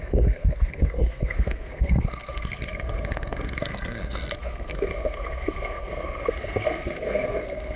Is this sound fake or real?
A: fake